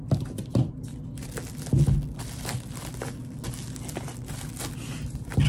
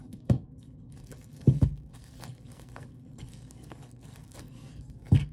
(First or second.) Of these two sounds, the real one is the first